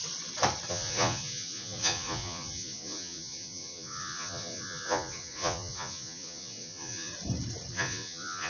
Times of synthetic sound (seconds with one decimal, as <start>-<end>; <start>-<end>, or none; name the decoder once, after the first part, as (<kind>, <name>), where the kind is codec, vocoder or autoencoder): 0.7-7.1 (vocoder, Vocos); 7.7-8.5